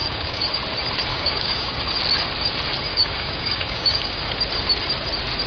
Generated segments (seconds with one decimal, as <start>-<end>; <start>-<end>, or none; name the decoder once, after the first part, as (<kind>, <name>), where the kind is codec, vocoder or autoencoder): 0.0-0.6 (codec, DAC); 1.1-1.9; 2.9-4.2